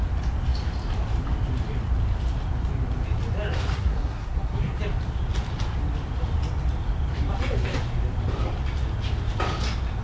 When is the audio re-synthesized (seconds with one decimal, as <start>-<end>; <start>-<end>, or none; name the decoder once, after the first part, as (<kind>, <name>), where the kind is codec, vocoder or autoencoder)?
3.7-4.8 (codec, SNAC)